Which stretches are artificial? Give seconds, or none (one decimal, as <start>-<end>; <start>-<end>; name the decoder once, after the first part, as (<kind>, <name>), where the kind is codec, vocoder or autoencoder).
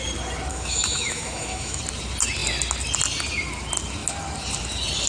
0.5-1.8 (autoencoder, DAC-VAE)